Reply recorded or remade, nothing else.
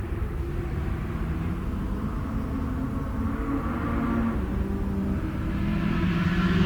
recorded